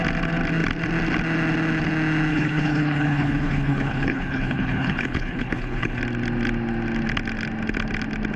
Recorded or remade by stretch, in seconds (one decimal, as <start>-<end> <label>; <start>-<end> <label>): 0.0-2.3 recorded; 2.3-6.0 remade; 6.0-8.4 recorded

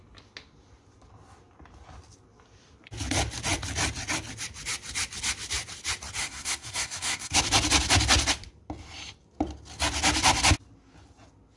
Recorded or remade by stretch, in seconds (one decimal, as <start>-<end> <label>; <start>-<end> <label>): 0.0-6.2 recorded; 6.2-7.4 remade; 7.4-11.6 recorded

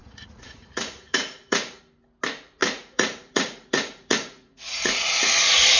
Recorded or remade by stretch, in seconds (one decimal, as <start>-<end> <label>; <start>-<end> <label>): 0.0-1.8 remade; 1.8-2.6 recorded; 2.6-5.8 remade

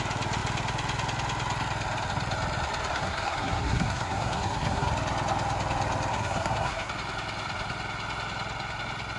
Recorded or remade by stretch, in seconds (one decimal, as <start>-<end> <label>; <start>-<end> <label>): 0.0-2.9 recorded; 2.9-4.9 remade; 4.9-6.1 recorded; 6.1-6.9 remade; 6.9-9.2 recorded